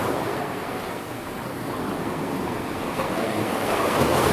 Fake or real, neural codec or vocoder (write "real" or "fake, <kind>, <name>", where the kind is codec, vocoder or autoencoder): fake, codec, SNAC